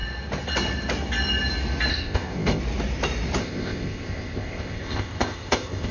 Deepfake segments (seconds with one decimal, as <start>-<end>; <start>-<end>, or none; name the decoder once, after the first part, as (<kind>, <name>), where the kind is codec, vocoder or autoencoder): 1.9-2.6 (codec, ZipCodec); 3.4-5.9